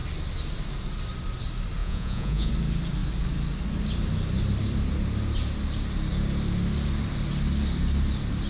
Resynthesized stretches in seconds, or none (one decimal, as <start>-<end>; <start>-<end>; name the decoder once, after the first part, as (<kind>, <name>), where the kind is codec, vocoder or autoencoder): 1.8-2.5 (vocoder, Vocos)